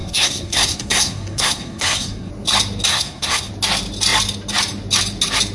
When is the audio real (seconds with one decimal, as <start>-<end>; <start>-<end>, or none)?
2.3-2.9; 3.5-5.5